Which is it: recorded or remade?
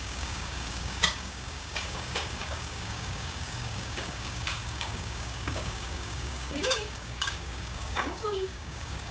remade